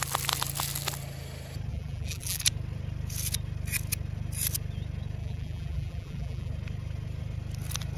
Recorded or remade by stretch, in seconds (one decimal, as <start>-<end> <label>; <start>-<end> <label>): 0.0-1.7 recorded; 1.7-2.4 remade; 2.4-5.2 recorded; 5.2-6.5 remade; 6.5-8.0 recorded